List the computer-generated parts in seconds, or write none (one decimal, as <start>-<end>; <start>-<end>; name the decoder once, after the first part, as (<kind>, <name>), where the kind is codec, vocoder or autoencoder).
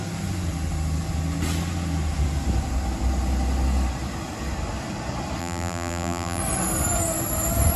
5.4-6.4 (vocoder, BigVGAN v2)